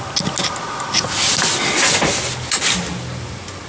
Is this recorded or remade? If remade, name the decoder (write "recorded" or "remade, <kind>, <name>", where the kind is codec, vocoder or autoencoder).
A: recorded